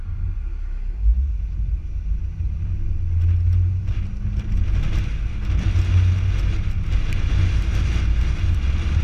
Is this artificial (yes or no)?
no